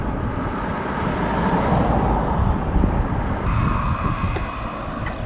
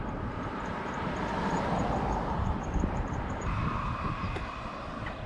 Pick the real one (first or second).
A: first